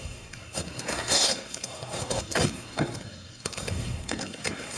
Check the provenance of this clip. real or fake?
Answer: fake